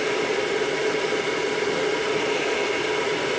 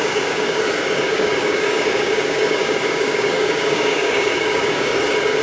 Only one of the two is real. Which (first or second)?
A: first